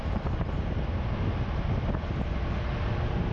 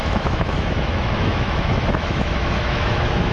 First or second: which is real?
first